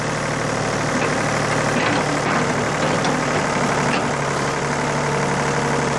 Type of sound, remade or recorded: recorded